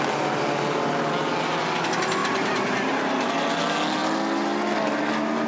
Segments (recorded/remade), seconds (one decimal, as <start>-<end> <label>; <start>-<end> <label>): 0.0-2.2 recorded; 2.2-3.3 remade; 3.3-5.5 recorded